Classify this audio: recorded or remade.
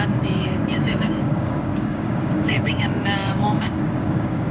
remade